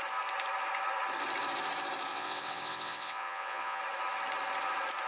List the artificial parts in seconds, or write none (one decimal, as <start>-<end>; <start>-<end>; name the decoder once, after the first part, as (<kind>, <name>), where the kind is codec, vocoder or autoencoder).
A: 2.1-3.8 (vocoder, WaveNeXt)